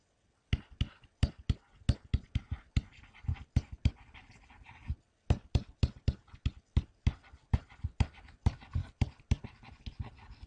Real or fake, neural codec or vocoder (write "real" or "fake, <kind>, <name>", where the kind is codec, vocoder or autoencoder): real